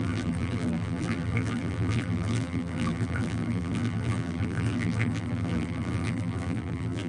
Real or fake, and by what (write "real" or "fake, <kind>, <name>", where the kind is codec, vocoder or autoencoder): fake, vocoder, BigVGAN v2